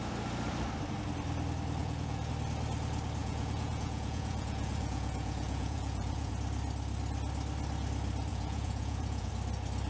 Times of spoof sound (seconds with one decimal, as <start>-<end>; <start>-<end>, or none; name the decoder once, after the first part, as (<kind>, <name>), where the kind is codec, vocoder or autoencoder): 1.8-2.3 (vocoder, Vocos); 3.2-6.3; 8.3-9.3